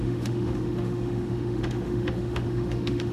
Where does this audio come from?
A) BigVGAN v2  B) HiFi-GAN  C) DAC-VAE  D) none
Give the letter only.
C